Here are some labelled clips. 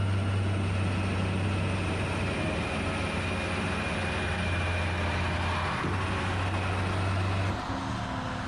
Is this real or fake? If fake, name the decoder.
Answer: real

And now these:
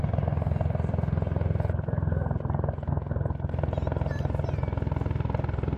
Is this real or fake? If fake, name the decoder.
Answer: real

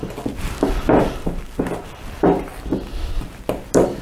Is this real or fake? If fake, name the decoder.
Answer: real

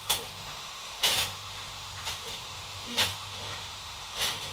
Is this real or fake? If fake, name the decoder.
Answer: fake, autoencoder, DAC-VAE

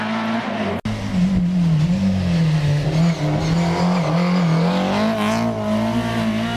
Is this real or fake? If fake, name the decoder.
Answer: real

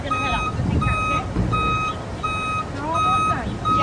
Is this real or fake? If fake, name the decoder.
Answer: real